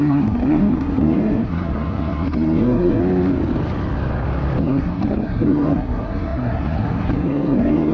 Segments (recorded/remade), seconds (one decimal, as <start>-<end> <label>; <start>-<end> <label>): 0.0-3.0 remade; 3.0-4.6 recorded; 4.6-7.9 remade